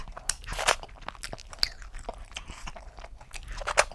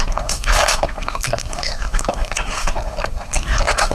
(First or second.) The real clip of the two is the first